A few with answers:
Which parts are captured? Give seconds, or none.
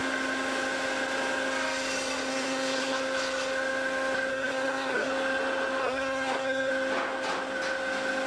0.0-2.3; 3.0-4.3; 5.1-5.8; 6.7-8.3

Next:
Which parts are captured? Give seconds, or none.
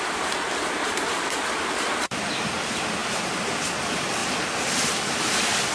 4.2-4.9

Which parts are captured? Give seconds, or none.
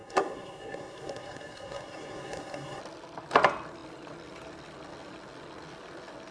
2.8-6.3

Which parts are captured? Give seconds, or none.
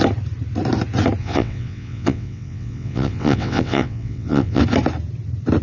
0.0-1.2; 4.6-5.6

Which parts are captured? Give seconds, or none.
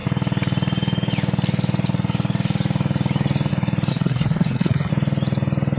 0.0-3.9; 4.9-5.8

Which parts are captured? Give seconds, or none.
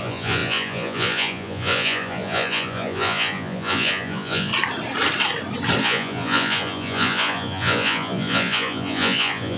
4.5-5.8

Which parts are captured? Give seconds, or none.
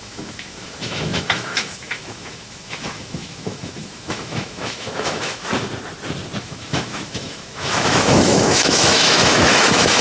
5.5-6.4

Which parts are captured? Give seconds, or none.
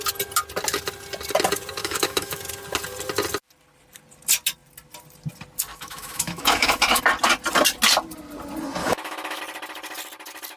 0.0-1.8; 2.4-5.7; 7.0-8.8; 9.4-10.6